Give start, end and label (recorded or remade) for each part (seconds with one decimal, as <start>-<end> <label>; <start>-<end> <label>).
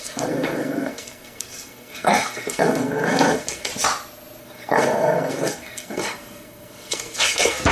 0.0-3.7 remade; 3.7-4.4 recorded; 4.4-7.7 remade